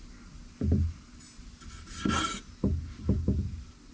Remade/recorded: recorded